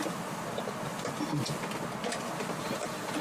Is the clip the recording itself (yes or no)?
yes